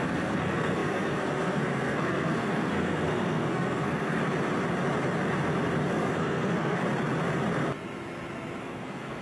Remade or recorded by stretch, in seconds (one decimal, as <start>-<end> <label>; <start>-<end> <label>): 0.0-4.2 remade; 4.2-5.9 recorded; 5.9-6.8 remade; 6.8-8.6 recorded; 8.6-9.2 remade